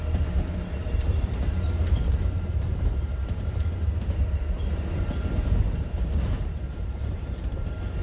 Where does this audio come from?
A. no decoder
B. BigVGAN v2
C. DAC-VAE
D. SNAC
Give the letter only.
B